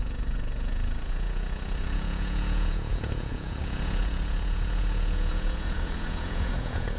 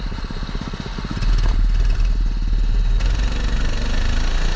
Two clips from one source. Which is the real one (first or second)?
second